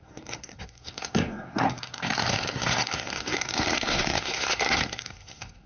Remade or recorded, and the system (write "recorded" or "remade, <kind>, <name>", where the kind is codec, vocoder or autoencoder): remade, codec, SNAC